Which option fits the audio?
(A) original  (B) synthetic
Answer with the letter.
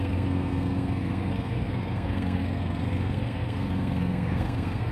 B